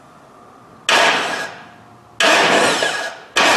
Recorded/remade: recorded